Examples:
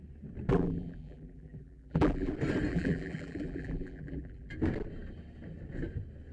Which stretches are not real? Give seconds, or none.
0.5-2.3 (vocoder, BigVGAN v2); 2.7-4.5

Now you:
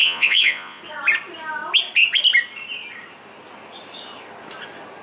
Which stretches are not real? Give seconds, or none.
0.0-0.8 (vocoder, Vocos)